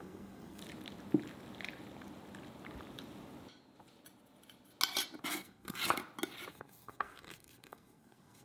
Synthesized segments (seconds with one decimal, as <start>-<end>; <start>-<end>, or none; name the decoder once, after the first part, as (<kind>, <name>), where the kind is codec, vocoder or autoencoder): 0.0-0.6 (codec, SNAC); 5.3-5.8; 6.5-8.4